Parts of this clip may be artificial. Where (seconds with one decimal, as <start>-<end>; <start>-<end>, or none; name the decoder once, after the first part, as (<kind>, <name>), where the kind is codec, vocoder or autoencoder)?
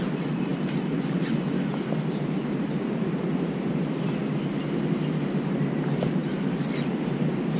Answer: none